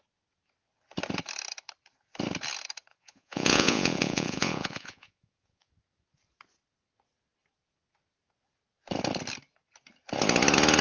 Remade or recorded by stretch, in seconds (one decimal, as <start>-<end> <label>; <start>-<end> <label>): 0.0-2.9 recorded; 2.9-5.7 remade; 5.7-10.8 recorded